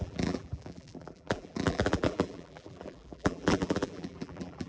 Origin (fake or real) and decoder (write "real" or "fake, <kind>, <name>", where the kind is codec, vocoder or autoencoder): fake, vocoder, BigVGAN v2